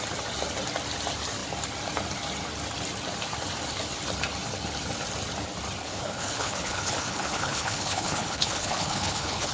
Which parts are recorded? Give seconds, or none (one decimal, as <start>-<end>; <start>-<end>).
0.0-5.8

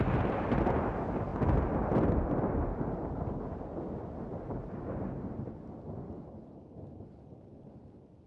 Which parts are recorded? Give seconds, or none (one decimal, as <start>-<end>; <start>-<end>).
0.0-8.3